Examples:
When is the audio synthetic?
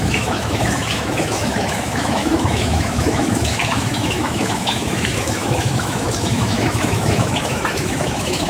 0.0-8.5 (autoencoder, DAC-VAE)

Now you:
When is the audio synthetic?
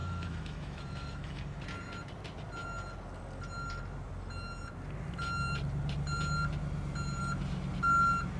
0.0-1.4 (autoencoder, DAC-VAE)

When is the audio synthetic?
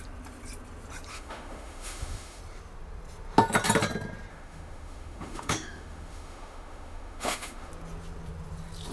1.1-2.4 (autoencoder, DAC-VAE); 4.3-7.7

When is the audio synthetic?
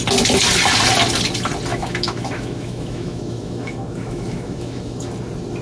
1.7-5.1 (autoencoder, DAC-VAE)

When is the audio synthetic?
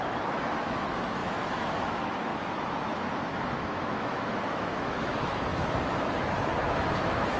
0.0-7.4 (autoencoder, DAC-VAE)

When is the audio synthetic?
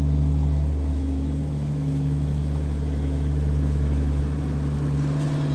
0.9-4.2 (autoencoder, DAC-VAE)